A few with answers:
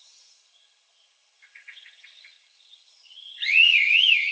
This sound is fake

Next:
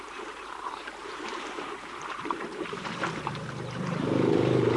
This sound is fake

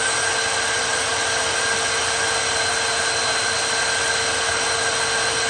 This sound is real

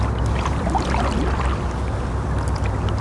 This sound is real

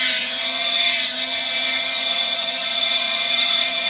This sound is fake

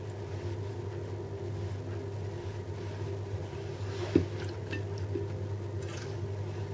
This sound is real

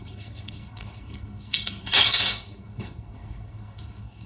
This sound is fake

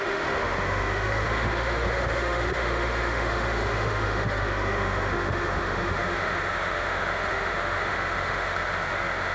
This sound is fake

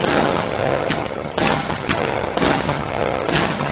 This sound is fake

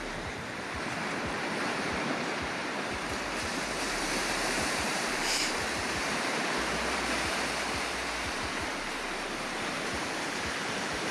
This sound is fake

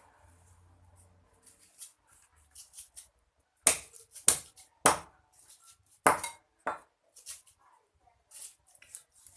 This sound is real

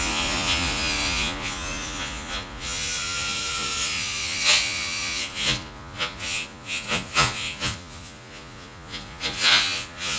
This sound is fake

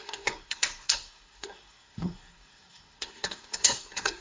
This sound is fake